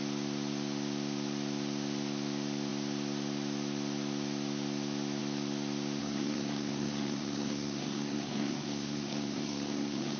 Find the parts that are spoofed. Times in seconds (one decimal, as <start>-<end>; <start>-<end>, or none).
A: 6.0-10.2